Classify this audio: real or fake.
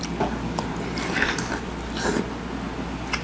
real